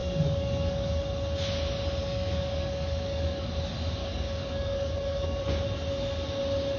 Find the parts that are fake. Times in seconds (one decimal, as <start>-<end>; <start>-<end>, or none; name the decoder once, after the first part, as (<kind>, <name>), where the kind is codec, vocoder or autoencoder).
0.0-1.0 (codec, DAC); 2.0-3.5; 4.0-5.5